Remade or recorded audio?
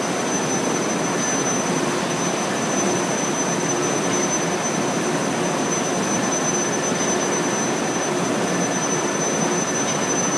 recorded